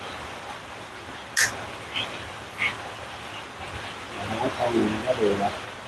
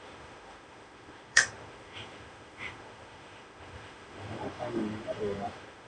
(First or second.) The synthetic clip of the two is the second